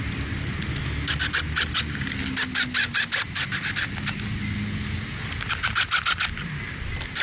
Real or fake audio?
real